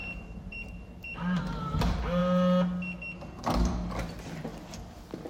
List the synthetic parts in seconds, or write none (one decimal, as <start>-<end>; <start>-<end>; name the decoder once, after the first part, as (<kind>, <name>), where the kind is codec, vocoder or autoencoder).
0.0-1.6 (vocoder, BigVGAN v2)